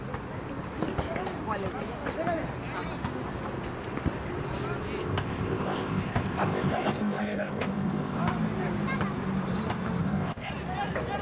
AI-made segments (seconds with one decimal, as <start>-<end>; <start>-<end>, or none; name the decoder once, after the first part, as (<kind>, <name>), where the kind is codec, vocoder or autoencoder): 5.0-8.2 (codec, ZipCodec); 10.0-10.5